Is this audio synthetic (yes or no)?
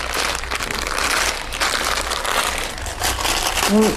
no